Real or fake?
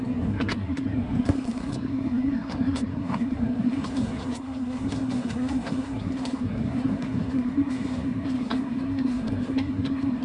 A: fake